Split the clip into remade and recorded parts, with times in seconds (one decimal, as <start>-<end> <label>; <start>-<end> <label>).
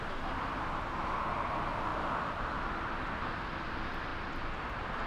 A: 0.0-4.1 remade; 4.1-4.6 recorded; 4.6-5.1 remade